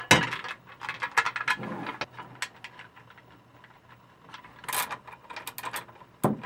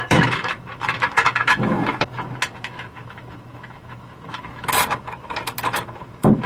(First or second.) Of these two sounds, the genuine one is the first